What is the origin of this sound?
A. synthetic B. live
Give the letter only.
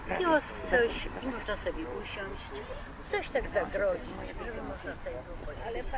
B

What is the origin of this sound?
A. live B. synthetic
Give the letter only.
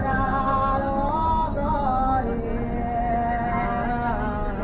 A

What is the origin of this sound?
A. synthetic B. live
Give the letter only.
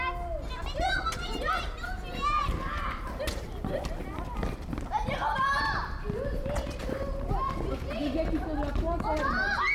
B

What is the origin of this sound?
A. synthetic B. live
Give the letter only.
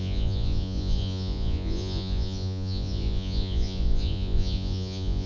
A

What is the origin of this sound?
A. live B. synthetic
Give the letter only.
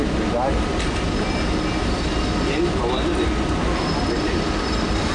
A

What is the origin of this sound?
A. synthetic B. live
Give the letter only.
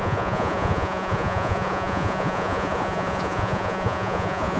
A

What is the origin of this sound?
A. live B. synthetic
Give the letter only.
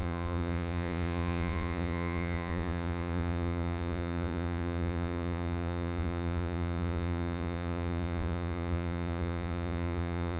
B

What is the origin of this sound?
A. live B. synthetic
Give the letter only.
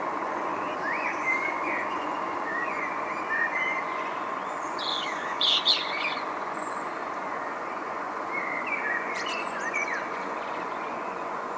B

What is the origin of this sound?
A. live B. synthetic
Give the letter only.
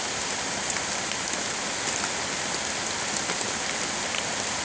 A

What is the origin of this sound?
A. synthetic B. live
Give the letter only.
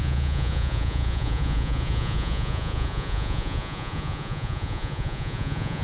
A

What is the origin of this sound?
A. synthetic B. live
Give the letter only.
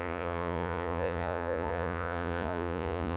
A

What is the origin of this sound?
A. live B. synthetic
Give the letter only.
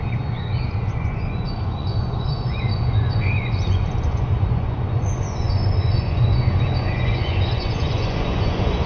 B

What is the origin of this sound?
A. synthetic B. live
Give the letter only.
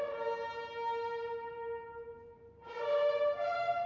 B